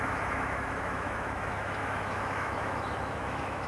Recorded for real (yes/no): no